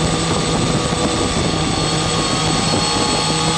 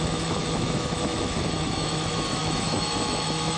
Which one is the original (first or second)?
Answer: first